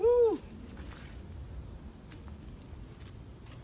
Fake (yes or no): no